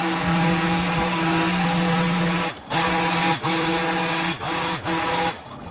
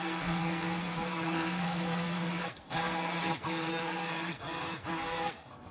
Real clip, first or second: first